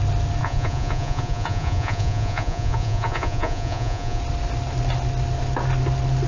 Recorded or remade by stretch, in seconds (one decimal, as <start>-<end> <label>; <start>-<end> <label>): 0.0-0.4 recorded; 0.4-4.2 remade; 4.2-6.3 recorded